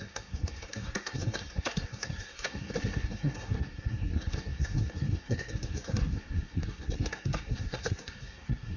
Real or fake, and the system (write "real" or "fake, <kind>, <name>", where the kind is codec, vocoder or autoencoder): fake, codec, SNAC